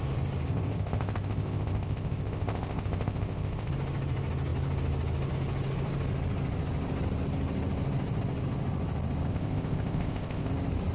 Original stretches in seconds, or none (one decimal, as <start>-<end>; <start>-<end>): 0.0-0.5; 3.7-9.3; 10.5-10.9